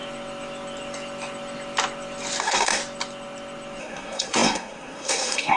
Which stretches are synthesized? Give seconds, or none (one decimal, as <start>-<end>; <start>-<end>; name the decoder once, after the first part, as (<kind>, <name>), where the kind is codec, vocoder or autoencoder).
2.4-2.8 (codec, SNAC); 3.8-5.6